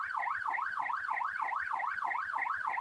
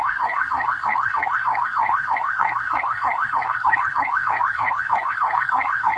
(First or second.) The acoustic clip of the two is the first